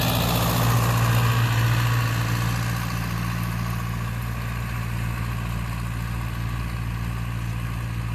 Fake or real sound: real